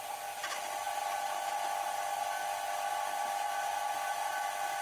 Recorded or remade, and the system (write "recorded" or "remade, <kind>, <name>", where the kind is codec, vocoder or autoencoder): recorded